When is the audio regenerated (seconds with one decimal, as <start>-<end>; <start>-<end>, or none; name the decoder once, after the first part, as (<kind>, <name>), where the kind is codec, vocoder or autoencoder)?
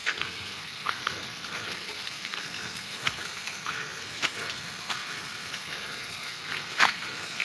0.0-7.4 (codec, SNAC)